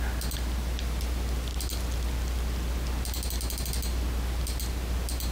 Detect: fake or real real